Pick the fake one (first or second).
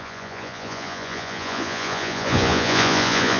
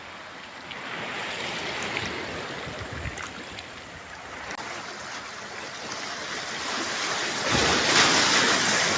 first